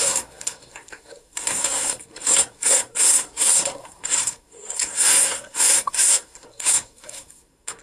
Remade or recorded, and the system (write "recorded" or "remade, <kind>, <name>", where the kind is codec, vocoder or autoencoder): remade, codec, SNAC